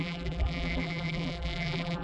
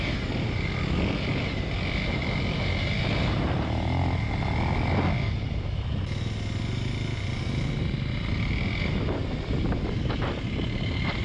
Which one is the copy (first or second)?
first